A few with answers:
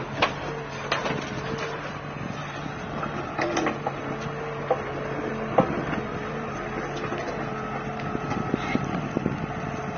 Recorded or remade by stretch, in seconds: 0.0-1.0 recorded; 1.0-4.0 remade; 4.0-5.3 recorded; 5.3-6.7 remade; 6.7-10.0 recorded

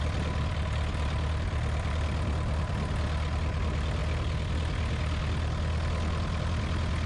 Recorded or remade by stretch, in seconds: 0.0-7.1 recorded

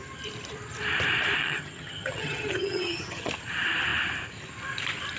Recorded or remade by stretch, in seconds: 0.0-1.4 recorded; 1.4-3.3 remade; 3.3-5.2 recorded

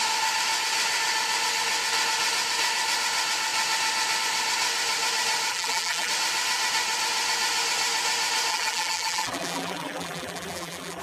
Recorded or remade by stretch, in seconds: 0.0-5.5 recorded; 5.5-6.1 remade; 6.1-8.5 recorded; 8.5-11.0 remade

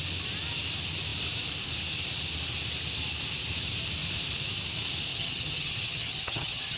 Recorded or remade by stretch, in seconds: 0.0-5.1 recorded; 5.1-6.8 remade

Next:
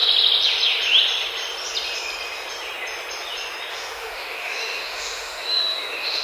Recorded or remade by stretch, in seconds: 0.0-3.7 recorded; 3.7-6.2 remade

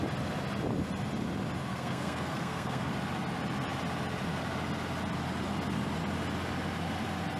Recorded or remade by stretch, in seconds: 0.0-1.7 recorded; 1.7-2.9 remade; 2.9-7.4 recorded

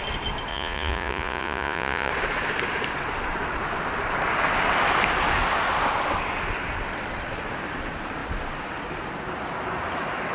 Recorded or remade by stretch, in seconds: 0.0-0.5 recorded; 0.5-2.1 remade; 2.1-10.3 recorded